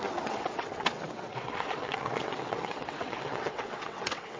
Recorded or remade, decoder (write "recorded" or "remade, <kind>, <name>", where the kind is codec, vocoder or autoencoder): remade, vocoder, WaveNeXt